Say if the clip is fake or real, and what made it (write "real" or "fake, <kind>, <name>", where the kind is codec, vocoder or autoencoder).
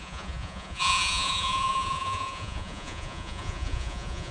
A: fake, vocoder, Vocos